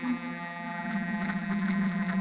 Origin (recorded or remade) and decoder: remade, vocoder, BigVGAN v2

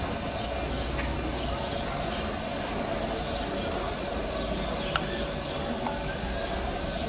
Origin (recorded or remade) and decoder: recorded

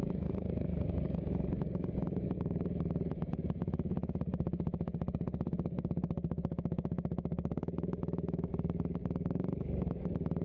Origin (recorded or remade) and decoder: remade, codec, DAC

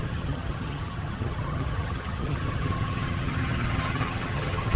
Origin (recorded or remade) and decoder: remade, vocoder, HiFi-GAN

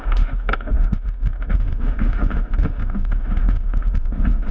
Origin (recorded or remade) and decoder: remade, autoencoder, DAC-VAE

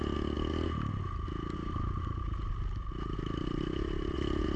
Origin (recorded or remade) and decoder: recorded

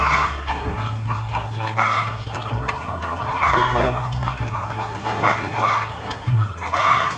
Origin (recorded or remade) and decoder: remade, codec, SNAC